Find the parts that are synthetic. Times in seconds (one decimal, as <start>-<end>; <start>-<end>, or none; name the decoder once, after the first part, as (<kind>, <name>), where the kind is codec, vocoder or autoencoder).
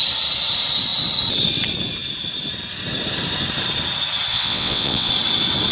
4.3-5.1 (vocoder, WaveNeXt)